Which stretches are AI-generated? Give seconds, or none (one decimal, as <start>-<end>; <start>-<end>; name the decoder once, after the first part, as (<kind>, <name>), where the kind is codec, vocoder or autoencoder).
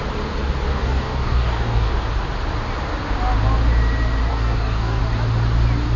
0.7-1.9 (codec, DAC); 4.3-5.0